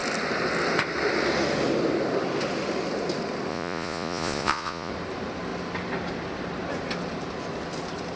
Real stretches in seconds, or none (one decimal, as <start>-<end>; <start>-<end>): 0.0-3.5; 4.9-8.2